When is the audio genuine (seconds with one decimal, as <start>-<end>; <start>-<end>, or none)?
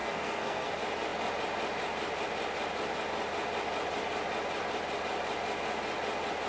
0.7-6.5